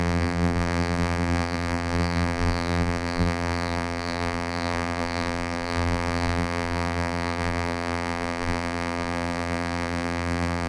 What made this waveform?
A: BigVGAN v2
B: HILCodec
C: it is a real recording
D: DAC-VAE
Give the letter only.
A